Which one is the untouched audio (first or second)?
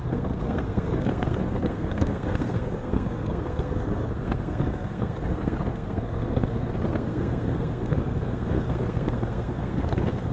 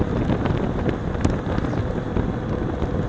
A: second